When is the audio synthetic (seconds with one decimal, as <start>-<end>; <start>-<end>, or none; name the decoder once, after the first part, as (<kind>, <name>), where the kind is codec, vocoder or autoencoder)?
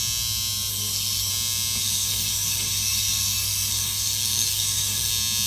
0.7-1.3 (codec, SNAC); 1.8-5.1